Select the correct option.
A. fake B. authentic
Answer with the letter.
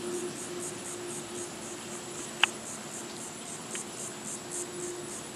B